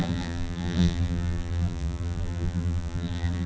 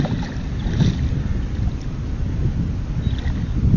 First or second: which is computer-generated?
first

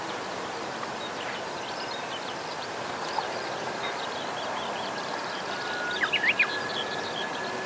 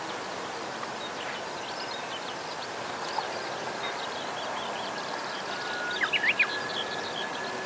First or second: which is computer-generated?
first